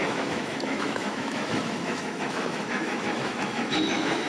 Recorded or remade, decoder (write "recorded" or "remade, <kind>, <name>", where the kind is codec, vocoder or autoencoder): remade, autoencoder, DAC-VAE